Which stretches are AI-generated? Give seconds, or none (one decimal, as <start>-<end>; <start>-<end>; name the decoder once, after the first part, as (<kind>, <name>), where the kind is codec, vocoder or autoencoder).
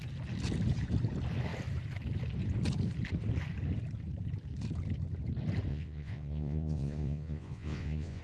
5.7-8.2 (vocoder, Vocos)